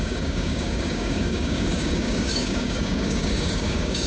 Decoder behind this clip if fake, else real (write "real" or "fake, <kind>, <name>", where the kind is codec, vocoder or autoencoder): fake, codec, DAC